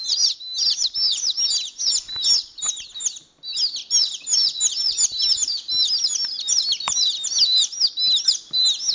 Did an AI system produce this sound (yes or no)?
no